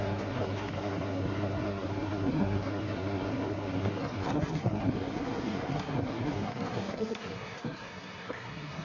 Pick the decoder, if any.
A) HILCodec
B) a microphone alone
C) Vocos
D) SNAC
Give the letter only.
D